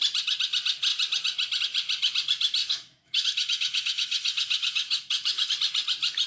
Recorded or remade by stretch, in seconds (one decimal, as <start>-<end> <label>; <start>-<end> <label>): 0.0-2.6 recorded; 2.6-5.5 remade; 5.5-6.3 recorded

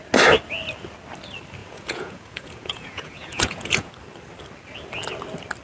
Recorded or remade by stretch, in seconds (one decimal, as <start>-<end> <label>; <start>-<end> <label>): 0.0-1.6 recorded; 1.6-3.9 remade; 3.9-5.6 recorded

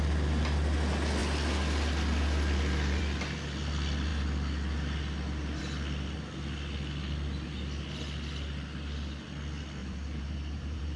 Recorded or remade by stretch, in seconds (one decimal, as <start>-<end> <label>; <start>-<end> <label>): 0.0-9.8 recorded; 9.8-11.0 remade

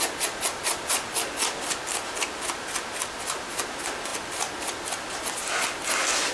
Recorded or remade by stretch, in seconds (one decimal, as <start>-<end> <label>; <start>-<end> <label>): 0.0-6.3 recorded

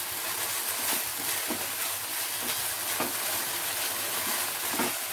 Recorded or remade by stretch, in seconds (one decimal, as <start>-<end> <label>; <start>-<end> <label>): 0.0-5.1 recorded

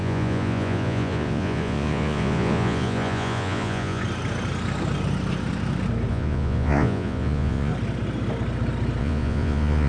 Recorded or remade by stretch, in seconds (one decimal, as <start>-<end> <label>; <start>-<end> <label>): 0.0-4.0 remade; 4.0-6.1 recorded; 6.1-7.7 remade; 7.7-9.0 recorded; 9.0-9.9 remade

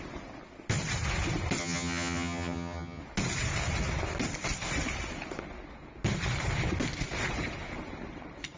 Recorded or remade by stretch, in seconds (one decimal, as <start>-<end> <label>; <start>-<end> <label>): 0.0-1.6 recorded; 1.6-3.0 remade; 3.0-8.6 recorded

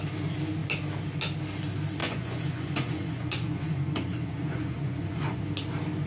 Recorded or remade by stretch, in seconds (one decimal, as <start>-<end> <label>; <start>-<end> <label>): 0.0-2.0 recorded; 2.0-5.4 remade; 5.4-6.1 recorded